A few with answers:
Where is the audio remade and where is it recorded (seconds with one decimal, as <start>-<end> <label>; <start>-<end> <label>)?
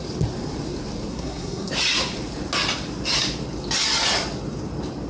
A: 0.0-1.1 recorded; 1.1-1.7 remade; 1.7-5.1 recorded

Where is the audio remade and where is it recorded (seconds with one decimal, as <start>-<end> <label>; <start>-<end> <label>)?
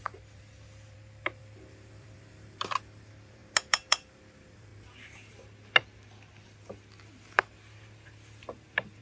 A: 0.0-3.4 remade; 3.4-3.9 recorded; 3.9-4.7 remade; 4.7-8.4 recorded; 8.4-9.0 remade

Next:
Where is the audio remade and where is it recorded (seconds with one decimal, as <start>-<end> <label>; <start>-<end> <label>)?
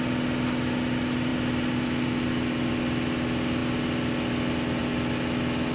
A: 0.0-5.7 recorded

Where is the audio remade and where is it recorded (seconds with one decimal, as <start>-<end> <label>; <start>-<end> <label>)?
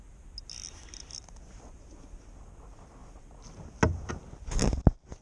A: 0.0-5.2 recorded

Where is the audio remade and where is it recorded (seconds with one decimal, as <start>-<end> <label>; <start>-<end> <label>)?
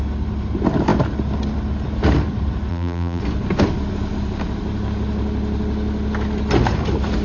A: 0.0-2.7 recorded; 2.7-3.2 remade; 3.2-7.2 recorded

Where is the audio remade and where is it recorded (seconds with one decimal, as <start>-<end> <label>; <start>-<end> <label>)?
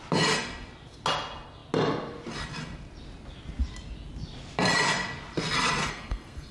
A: 0.0-5.8 recorded; 5.8-6.5 remade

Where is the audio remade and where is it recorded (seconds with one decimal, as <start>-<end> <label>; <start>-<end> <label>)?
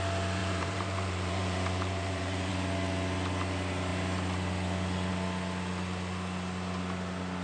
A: 0.0-0.4 recorded; 0.4-2.5 remade; 2.5-7.4 recorded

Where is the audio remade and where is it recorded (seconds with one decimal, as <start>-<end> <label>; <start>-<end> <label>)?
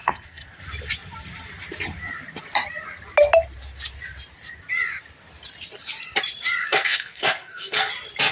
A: 0.0-0.6 remade; 0.6-6.6 recorded; 6.6-7.9 remade; 7.9-8.3 recorded